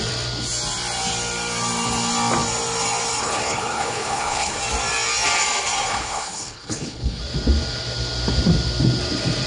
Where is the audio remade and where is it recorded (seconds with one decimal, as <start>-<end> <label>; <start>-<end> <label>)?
0.0-3.2 recorded; 3.2-4.6 remade; 4.6-5.9 recorded; 5.9-7.2 remade; 7.2-9.5 recorded